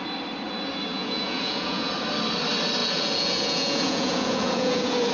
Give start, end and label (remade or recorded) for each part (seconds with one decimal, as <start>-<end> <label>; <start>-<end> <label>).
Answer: 0.0-0.9 recorded; 0.9-1.9 remade; 1.9-2.8 recorded; 2.8-5.1 remade